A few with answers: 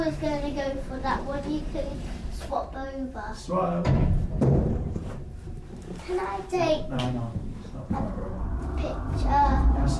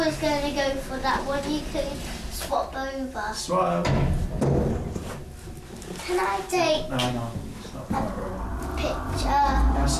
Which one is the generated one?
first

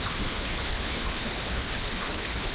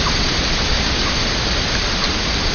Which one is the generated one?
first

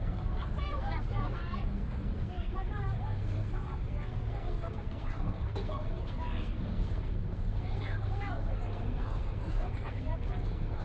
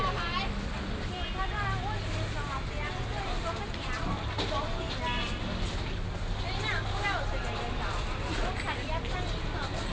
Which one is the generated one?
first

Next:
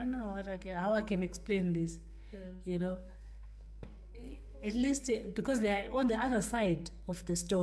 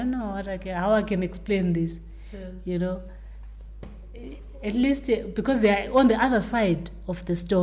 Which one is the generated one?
first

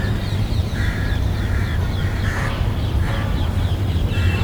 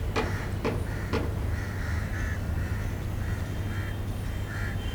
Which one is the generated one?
first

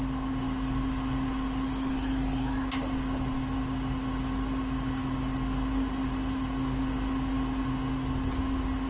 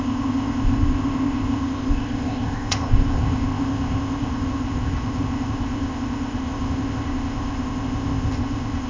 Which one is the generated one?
second